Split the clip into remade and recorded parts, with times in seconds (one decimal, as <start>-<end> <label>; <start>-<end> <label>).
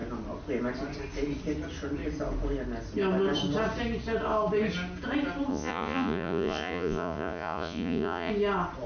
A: 0.0-5.5 recorded; 5.5-8.3 remade; 8.3-8.9 recorded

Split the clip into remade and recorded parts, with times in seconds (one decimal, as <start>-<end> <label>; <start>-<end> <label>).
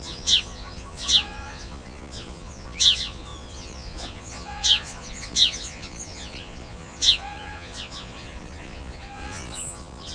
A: 0.0-10.1 remade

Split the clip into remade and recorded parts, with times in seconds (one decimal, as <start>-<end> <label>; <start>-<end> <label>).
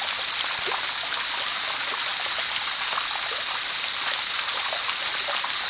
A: 0.0-5.7 recorded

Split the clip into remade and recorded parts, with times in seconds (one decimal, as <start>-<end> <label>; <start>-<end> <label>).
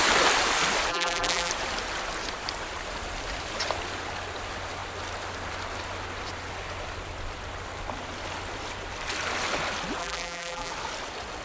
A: 0.0-0.9 recorded; 0.9-1.5 remade; 1.5-10.0 recorded; 10.0-10.7 remade; 10.7-11.4 recorded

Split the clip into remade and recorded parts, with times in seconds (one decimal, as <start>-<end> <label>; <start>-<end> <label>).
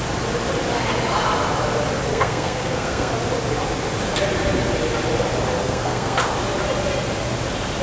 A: 0.0-2.1 recorded; 2.1-3.1 remade; 3.1-5.6 recorded; 5.6-6.2 remade; 6.2-7.8 recorded